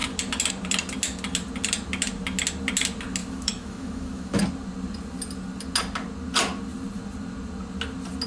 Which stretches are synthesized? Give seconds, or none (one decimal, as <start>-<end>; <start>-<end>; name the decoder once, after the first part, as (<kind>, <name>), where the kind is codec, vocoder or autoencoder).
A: 3.2-4.4 (autoencoder, DAC-VAE)